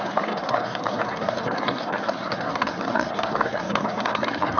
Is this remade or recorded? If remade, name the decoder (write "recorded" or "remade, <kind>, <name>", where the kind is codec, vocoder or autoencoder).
remade, codec, SNAC